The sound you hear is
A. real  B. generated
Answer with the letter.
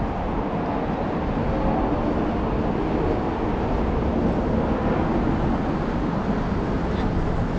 A